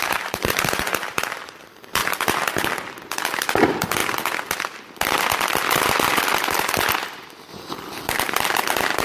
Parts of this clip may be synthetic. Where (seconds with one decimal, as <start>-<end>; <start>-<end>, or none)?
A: 0.0-2.0; 3.2-4.0; 7.5-9.0